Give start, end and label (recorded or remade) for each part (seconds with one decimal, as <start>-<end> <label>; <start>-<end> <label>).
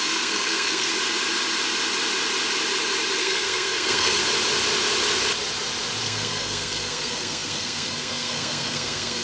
0.0-0.9 remade; 0.9-3.2 recorded; 3.2-4.2 remade; 4.2-6.0 recorded; 6.0-9.2 remade